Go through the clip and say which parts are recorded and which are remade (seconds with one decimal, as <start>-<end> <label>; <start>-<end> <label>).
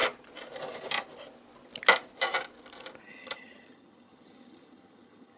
0.0-3.0 recorded; 3.0-5.4 remade